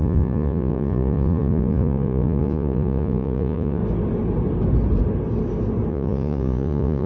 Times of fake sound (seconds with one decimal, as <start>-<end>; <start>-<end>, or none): 0.0-3.8; 5.9-7.1